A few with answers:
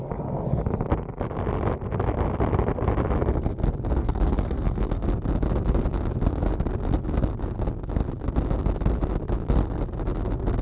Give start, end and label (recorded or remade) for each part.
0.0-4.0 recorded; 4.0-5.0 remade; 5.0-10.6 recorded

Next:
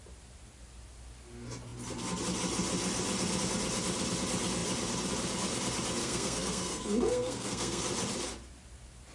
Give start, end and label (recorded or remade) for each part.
0.0-6.0 recorded; 6.0-7.8 remade; 7.8-9.1 recorded

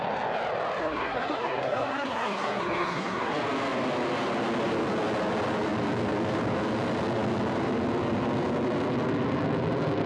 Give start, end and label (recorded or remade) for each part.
0.0-0.8 recorded; 0.8-3.3 remade; 3.3-10.1 recorded

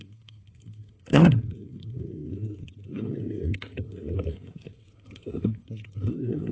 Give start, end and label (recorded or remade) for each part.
0.0-6.5 remade